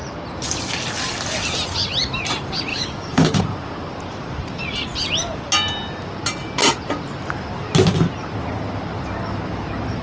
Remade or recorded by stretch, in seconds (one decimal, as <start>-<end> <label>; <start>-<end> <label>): 0.0-2.7 recorded; 2.7-3.4 remade; 3.4-10.0 recorded